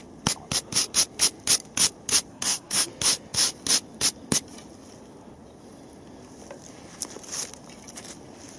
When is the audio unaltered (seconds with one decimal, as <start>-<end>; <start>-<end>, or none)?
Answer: 0.0-2.3; 2.9-8.6